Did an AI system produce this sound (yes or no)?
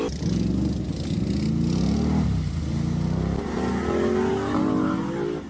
no